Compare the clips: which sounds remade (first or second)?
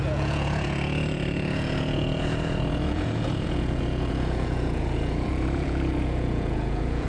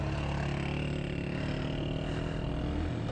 first